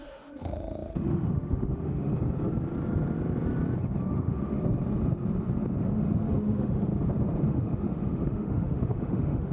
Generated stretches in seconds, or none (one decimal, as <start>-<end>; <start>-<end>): 0.0-2.1; 4.1-4.6; 5.8-6.9; 7.5-9.5